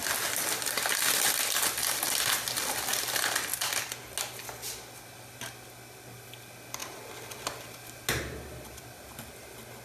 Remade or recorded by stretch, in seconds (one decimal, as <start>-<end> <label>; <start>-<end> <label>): 0.0-9.8 recorded